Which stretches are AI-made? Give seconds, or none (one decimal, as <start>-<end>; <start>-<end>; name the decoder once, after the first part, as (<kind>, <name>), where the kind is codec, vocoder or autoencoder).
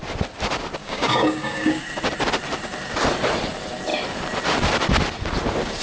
0.8-1.8 (codec, DAC)